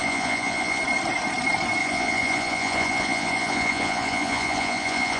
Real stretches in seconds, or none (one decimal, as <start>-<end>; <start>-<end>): 0.8-1.8